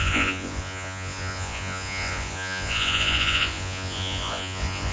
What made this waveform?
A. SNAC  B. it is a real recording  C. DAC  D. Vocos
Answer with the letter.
D